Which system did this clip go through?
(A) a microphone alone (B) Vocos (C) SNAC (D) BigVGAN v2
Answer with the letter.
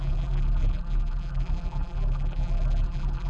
D